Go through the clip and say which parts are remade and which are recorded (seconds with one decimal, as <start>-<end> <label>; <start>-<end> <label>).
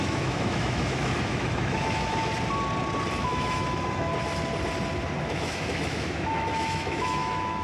0.0-2.3 remade; 2.3-3.2 recorded; 3.2-4.1 remade; 4.1-5.2 recorded; 5.2-7.6 remade